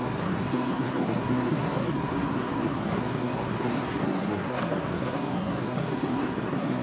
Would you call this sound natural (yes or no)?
no